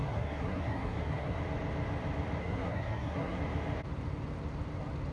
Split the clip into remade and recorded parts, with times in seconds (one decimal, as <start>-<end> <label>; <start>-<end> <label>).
0.0-1.4 remade; 1.4-2.4 recorded; 2.4-3.4 remade; 3.4-5.1 recorded